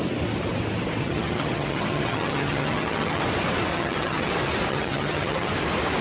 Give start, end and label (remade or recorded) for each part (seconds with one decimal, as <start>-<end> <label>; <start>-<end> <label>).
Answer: 0.0-1.0 recorded; 1.0-3.2 remade; 3.2-3.7 recorded; 3.7-4.3 remade; 4.3-4.7 recorded; 4.7-5.5 remade; 5.5-6.0 recorded